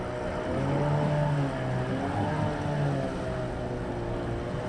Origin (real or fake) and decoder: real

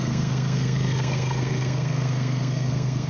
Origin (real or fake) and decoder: fake, codec, SNAC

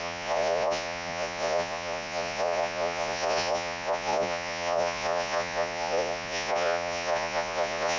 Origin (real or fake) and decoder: fake, vocoder, Vocos